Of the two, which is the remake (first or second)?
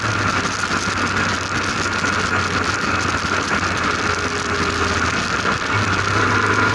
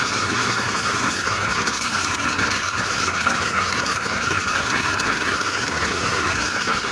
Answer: second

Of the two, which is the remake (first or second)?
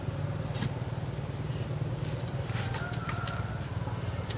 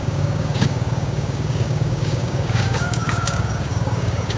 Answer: second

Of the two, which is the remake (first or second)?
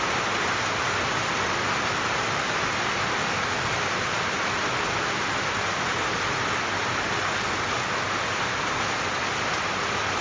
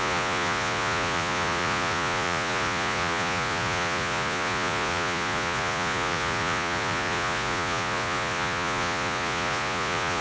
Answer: second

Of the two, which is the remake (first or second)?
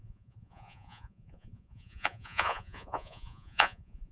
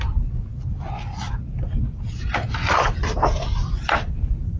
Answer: first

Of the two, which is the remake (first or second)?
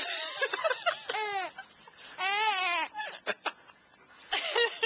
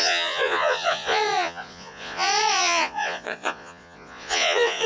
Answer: second